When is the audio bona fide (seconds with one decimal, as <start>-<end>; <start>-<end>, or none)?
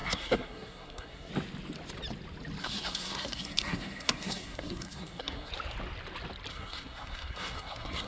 1.3-2.6; 5.5-6.5